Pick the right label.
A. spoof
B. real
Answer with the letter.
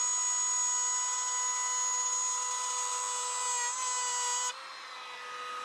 B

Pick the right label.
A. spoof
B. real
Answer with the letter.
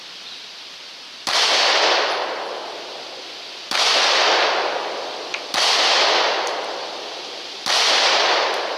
A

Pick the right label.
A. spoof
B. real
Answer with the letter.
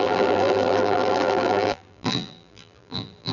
A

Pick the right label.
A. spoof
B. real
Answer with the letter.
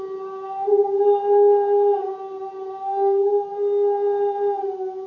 B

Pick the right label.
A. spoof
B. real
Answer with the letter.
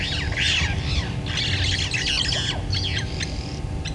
B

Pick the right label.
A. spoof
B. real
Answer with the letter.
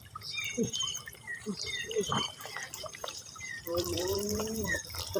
A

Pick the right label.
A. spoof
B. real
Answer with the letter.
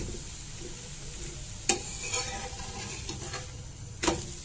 B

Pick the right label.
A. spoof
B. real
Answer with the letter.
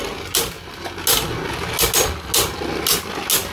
B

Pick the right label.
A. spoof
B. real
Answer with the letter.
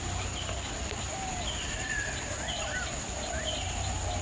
B